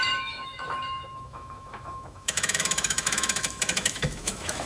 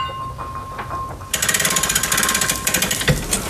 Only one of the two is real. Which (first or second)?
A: second